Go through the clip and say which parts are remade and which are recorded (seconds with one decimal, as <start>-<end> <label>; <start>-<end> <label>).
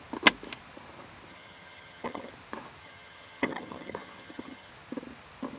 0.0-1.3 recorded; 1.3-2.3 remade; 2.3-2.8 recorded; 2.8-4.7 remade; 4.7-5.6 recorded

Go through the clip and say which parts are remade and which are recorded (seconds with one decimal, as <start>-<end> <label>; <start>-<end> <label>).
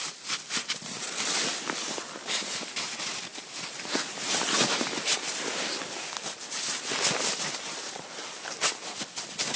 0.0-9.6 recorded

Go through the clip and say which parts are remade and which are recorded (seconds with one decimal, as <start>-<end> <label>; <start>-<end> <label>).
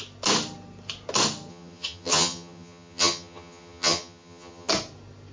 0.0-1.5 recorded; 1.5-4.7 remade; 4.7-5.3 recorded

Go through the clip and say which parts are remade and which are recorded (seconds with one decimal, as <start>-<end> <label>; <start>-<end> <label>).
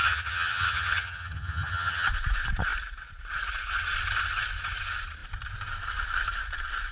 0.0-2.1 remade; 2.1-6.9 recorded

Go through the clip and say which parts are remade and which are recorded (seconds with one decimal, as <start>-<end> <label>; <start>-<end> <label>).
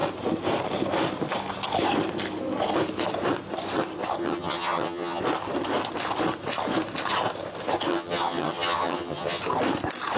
0.0-4.2 recorded; 4.2-5.2 remade; 5.2-7.9 recorded; 7.9-9.4 remade; 9.4-10.2 recorded